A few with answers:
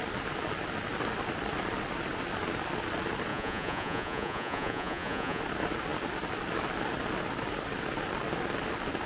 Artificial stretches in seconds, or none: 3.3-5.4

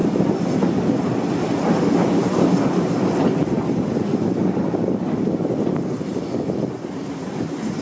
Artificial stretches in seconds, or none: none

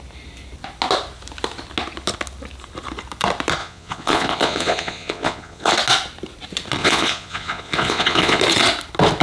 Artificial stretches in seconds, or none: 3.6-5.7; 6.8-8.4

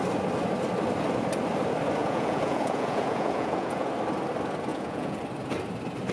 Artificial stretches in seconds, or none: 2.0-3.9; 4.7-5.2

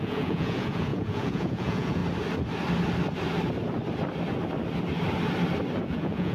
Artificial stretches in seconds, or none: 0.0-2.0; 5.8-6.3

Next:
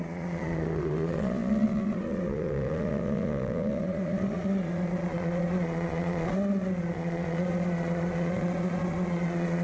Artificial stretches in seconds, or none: 0.0-9.6

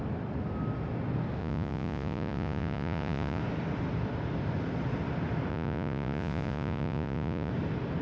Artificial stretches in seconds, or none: 1.4-3.4; 5.5-7.5